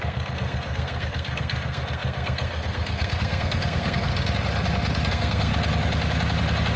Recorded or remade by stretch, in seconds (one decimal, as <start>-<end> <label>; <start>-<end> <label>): 0.0-4.1 remade; 4.1-5.1 recorded; 5.1-5.5 remade; 5.5-6.8 recorded